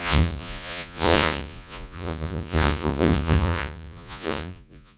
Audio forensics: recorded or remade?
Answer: remade